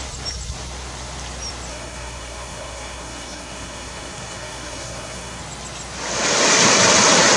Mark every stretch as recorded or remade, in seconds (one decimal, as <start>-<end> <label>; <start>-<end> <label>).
0.0-1.7 recorded; 1.7-5.4 remade; 5.4-7.4 recorded